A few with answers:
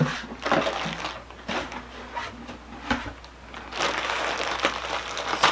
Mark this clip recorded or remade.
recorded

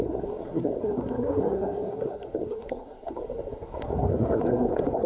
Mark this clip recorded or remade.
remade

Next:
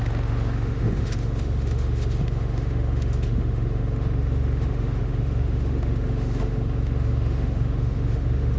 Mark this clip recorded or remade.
remade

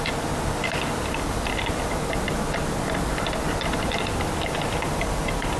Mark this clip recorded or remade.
recorded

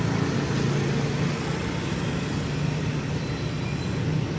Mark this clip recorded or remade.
recorded